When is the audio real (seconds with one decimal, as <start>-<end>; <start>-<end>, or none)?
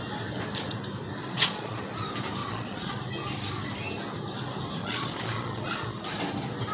0.0-1.2; 1.8-2.4; 3.0-4.8; 6.0-6.7